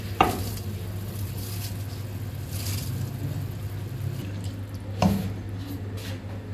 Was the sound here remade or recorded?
recorded